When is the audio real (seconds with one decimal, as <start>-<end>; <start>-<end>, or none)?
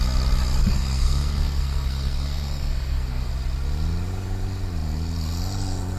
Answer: 0.0-0.6; 3.3-6.0